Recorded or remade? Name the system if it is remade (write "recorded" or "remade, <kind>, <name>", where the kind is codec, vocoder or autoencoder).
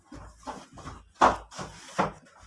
recorded